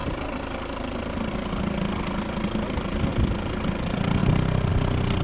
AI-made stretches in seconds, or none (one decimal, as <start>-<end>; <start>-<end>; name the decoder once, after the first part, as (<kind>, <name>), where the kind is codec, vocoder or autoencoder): 0.0-4.2 (vocoder, BigVGAN v2); 4.7-5.2